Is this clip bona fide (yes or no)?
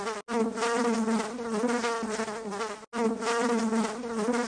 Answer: yes